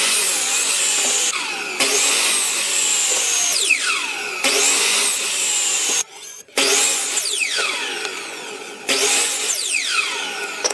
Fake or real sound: fake